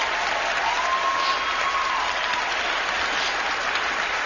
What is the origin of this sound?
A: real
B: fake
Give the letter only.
A